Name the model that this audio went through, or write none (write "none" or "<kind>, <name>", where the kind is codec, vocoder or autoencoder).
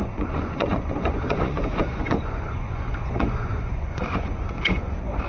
vocoder, Vocos